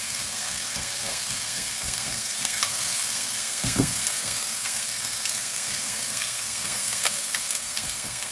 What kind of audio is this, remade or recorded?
remade